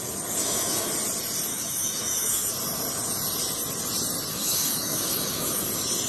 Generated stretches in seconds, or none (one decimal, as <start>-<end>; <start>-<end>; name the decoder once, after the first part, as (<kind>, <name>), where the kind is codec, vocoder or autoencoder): 0.4-0.9 (autoencoder, DAC-VAE); 1.5-2.5; 4.3-5.6